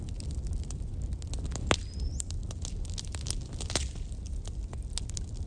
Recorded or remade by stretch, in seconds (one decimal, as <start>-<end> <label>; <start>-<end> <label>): 0.0-5.5 recorded